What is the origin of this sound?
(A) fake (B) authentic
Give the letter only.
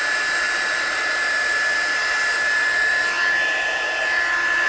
B